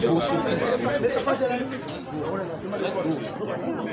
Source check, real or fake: real